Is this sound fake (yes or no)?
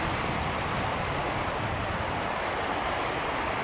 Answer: yes